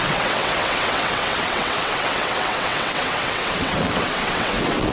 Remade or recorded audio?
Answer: remade